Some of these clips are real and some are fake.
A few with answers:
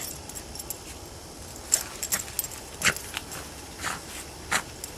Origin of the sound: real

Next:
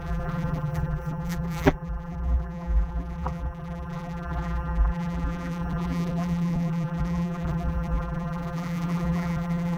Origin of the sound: fake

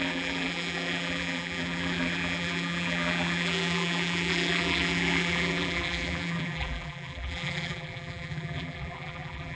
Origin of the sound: fake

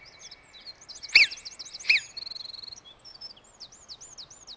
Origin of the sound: real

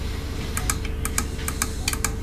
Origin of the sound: real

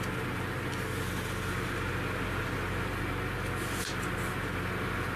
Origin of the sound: real